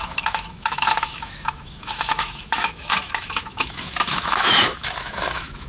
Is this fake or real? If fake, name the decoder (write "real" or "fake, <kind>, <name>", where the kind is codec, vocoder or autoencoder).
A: fake, autoencoder, DAC-VAE